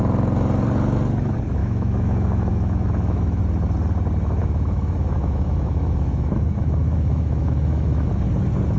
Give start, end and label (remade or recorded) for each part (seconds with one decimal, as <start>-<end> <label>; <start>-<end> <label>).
0.0-1.6 recorded; 1.6-3.4 remade; 3.4-4.4 recorded; 4.4-8.1 remade; 8.1-8.8 recorded